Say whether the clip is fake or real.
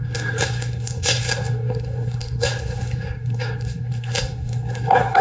fake